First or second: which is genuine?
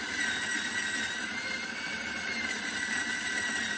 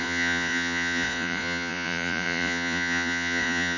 first